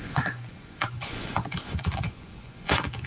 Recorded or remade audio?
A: remade